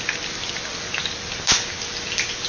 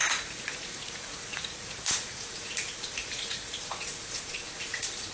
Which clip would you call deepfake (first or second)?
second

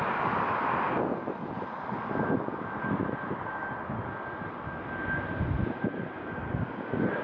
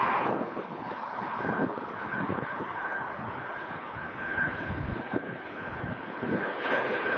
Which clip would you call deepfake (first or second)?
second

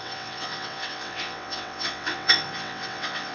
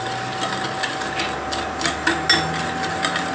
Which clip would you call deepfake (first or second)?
first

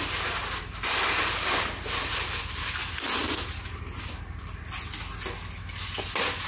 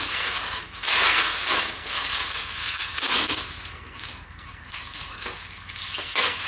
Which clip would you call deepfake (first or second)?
second